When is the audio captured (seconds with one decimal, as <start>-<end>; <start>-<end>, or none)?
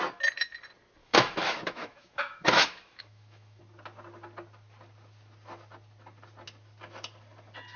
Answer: 0.0-1.0; 3.6-7.8